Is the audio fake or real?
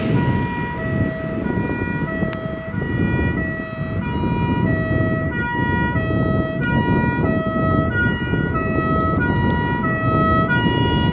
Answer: real